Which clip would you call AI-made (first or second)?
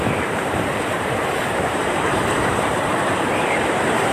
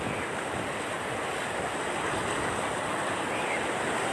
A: first